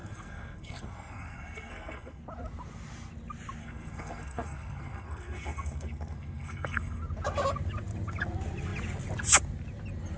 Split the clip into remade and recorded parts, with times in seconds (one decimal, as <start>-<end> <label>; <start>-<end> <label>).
0.0-2.2 remade; 2.2-3.6 recorded; 3.6-7.0 remade; 7.0-10.2 recorded